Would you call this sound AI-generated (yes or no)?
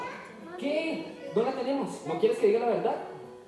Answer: no